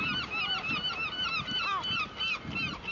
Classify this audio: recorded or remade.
recorded